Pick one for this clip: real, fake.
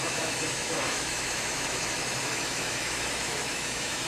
fake